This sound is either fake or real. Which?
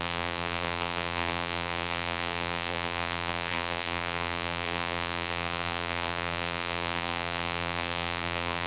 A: fake